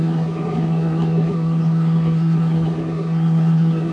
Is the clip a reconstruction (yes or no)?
yes